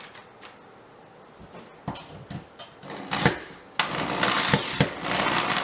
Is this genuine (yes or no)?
yes